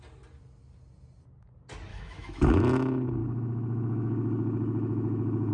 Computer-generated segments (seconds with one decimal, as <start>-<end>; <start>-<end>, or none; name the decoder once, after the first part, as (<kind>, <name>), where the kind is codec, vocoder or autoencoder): 1.9-2.6 (autoencoder, DAC-VAE); 3.2-5.5